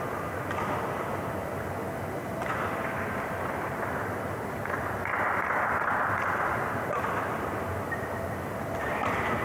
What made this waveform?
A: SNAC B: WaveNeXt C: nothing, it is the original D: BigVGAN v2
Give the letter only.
C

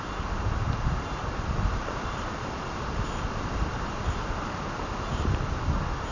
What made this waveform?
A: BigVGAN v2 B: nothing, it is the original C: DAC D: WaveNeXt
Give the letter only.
B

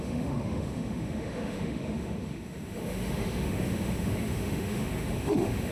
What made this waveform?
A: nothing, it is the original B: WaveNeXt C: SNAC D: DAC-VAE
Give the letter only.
D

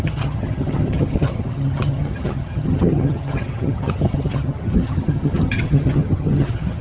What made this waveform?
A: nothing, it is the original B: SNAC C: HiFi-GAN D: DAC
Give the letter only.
C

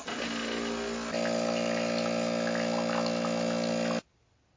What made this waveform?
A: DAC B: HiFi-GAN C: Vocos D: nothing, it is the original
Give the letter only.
D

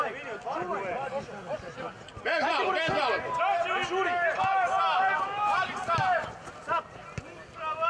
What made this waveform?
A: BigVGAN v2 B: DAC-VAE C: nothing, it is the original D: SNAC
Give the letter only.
C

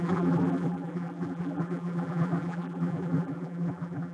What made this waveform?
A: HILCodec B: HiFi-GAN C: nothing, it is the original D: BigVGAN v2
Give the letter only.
D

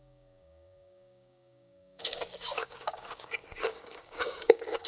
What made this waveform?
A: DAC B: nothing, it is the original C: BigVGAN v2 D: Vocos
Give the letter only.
A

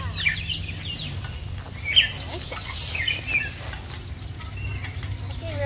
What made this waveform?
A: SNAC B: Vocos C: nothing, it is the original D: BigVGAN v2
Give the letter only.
C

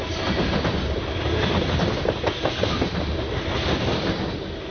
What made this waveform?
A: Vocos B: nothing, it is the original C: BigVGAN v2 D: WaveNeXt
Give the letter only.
B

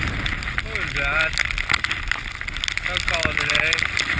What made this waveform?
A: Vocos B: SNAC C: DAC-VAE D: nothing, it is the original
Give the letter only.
D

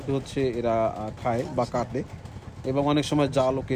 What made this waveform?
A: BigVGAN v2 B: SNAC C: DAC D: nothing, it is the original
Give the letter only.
D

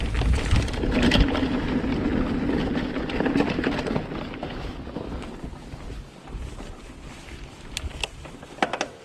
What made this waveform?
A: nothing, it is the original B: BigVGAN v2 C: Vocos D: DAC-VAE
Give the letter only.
A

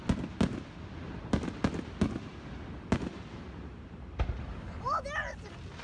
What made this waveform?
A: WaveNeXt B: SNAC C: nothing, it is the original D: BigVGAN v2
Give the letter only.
C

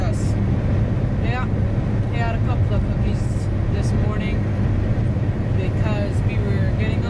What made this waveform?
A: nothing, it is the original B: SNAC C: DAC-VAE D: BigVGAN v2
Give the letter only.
A